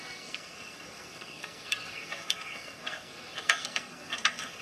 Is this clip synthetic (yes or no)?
yes